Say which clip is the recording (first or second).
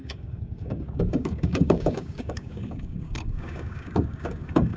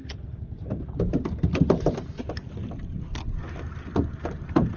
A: second